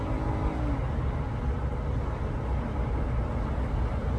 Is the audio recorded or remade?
recorded